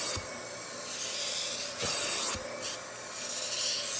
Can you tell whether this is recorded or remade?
recorded